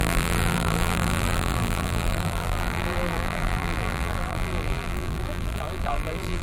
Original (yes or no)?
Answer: no